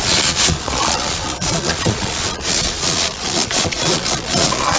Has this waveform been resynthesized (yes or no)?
yes